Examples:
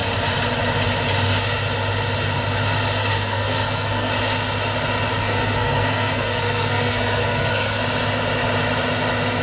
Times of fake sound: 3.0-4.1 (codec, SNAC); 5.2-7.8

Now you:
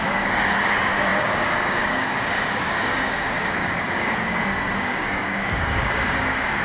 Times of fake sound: 0.0-6.6 (codec, DAC)

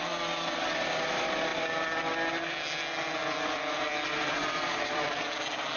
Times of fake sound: 3.2-3.8 (vocoder, BigVGAN v2); 4.4-5.1

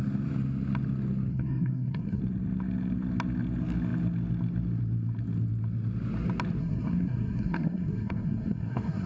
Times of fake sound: 1.3-2.2 (codec, SNAC); 6.6-9.1